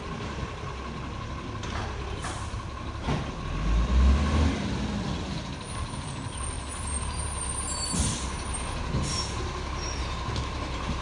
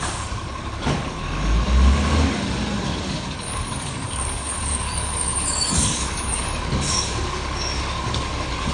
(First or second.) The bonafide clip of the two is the first